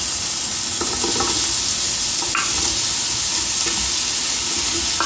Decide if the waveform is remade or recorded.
recorded